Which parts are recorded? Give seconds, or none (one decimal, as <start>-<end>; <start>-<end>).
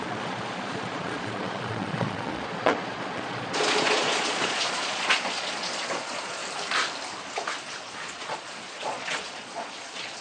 6.4-7.8